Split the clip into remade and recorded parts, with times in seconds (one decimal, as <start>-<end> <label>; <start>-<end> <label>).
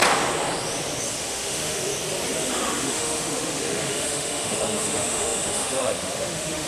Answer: 0.0-1.2 recorded; 1.2-1.9 remade; 1.9-2.5 recorded; 2.5-6.7 remade